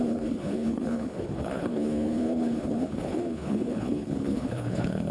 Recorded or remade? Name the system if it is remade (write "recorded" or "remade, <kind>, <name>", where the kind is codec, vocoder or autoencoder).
remade, codec, HILCodec